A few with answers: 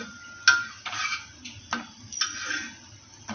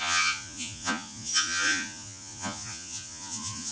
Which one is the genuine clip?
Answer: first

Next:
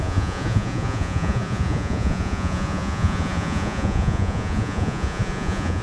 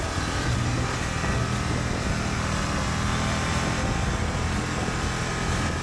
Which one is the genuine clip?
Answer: second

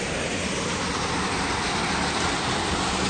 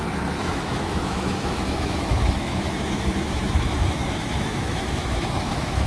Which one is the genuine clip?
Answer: first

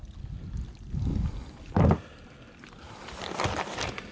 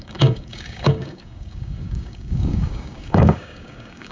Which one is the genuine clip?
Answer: first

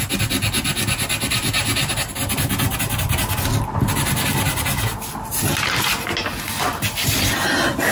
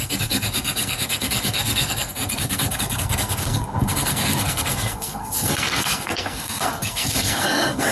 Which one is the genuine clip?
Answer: first